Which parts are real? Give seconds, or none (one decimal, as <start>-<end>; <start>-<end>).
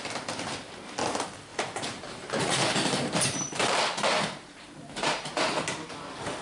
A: 0.0-1.5; 5.3-6.4